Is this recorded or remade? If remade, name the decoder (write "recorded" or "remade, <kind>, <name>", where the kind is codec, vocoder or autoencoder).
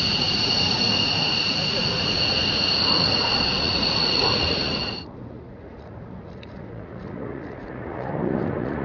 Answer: remade, vocoder, Vocos